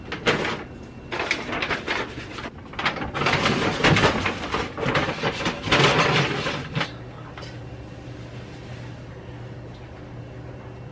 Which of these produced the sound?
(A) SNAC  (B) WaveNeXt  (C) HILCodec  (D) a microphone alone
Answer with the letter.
D